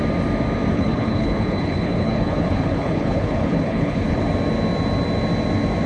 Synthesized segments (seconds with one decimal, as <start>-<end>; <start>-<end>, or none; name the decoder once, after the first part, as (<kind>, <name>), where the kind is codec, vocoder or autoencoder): 0.7-4.2 (codec, HILCodec)